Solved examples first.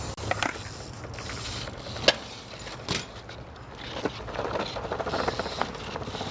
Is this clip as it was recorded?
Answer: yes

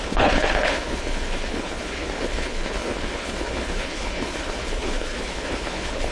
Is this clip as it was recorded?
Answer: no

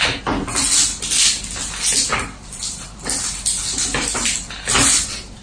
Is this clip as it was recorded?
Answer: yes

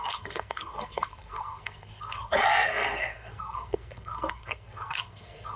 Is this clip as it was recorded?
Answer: no